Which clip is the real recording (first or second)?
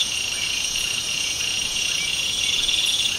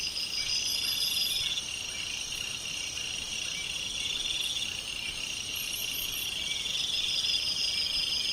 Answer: second